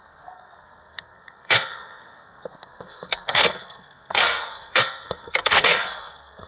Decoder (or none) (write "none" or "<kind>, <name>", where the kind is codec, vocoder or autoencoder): codec, SNAC